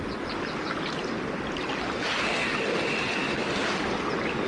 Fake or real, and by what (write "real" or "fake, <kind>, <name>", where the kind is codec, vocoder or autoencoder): real